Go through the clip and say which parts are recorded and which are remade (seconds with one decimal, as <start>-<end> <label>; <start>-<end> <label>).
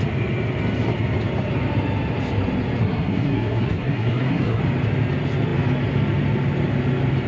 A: 0.0-2.8 recorded; 2.8-4.6 remade; 4.6-7.3 recorded